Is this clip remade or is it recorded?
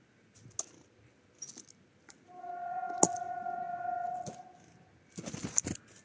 recorded